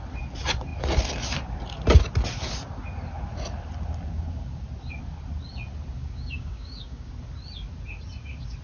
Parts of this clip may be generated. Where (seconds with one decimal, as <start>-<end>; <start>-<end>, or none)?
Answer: 6.0-7.1